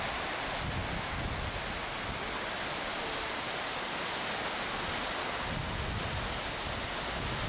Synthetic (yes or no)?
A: no